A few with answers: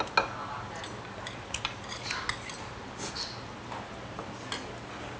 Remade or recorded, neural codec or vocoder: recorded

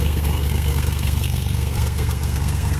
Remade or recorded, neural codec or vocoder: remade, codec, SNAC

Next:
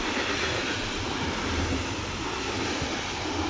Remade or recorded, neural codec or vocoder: recorded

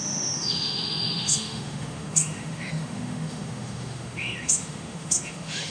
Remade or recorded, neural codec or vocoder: remade, autoencoder, DAC-VAE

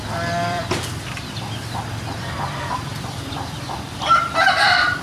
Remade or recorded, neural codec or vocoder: remade, vocoder, BigVGAN v2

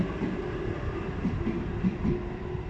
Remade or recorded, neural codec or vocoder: recorded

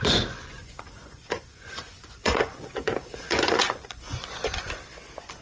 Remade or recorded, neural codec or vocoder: remade, vocoder, Vocos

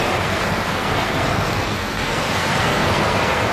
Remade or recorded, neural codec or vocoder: remade, codec, SNAC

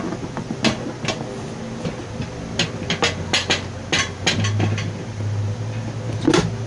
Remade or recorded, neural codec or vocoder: recorded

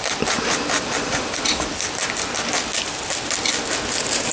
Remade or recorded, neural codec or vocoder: recorded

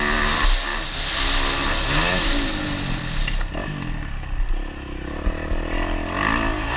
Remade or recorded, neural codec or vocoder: recorded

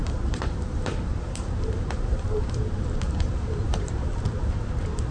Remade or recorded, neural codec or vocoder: remade, vocoder, BigVGAN v2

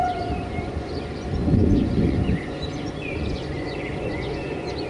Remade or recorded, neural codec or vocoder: remade, vocoder, Vocos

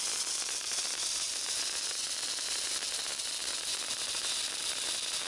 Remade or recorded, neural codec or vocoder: recorded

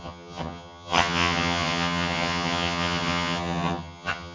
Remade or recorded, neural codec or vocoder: remade, vocoder, HiFi-GAN